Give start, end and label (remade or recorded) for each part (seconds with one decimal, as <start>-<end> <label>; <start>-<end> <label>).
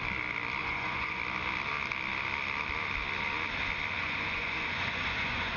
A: 0.0-0.6 recorded; 0.6-1.2 remade; 1.2-4.0 recorded; 4.0-5.6 remade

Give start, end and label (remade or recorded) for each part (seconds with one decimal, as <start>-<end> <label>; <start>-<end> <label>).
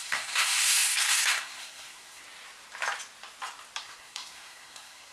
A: 0.0-2.2 remade; 2.2-3.8 recorded; 3.8-5.1 remade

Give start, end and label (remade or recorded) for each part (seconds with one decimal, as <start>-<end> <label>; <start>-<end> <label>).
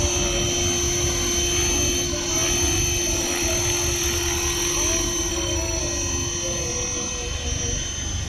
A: 0.0-5.3 recorded; 5.3-5.8 remade; 5.8-8.3 recorded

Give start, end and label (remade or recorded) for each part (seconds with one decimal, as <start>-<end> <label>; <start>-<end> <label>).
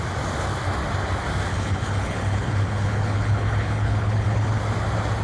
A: 0.0-1.5 recorded; 1.5-4.6 remade; 4.6-5.2 recorded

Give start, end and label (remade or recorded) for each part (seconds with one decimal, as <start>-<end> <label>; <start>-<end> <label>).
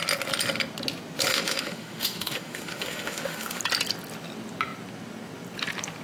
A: 0.0-1.3 recorded; 1.3-3.6 remade; 3.6-6.0 recorded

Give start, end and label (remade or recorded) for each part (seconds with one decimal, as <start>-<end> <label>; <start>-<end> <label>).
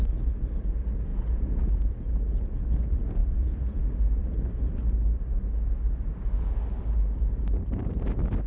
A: 0.0-1.1 recorded; 1.1-1.9 remade; 1.9-3.2 recorded; 3.2-3.8 remade; 3.8-8.5 recorded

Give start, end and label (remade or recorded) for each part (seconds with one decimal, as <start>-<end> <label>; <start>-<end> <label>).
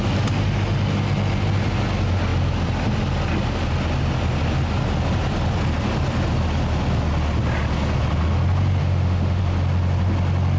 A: 0.0-8.8 recorded; 8.8-9.4 remade; 9.4-10.6 recorded